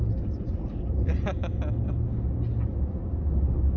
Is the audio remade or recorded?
recorded